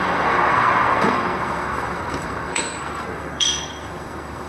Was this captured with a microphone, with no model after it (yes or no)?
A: no